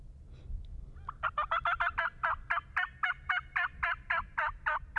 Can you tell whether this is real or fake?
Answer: real